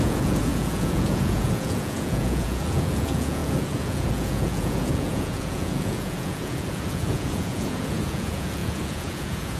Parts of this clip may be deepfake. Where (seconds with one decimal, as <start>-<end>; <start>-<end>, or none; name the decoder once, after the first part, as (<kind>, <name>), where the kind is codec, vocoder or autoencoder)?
0.0-9.6 (vocoder, Vocos)